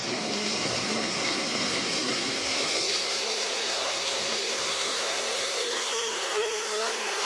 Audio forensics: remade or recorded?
remade